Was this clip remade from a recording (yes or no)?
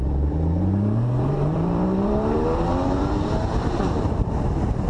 yes